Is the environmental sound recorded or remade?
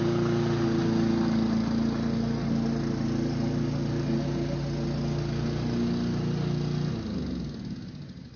recorded